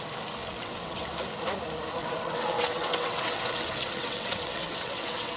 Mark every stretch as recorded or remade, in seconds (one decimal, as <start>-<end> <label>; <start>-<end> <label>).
0.0-0.4 recorded; 0.4-1.1 remade; 1.1-2.0 recorded; 2.0-5.4 remade